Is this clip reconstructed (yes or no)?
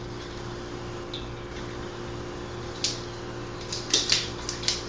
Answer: no